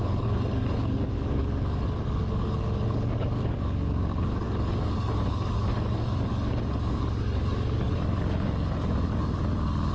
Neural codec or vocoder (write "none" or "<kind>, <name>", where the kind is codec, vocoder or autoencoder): codec, DAC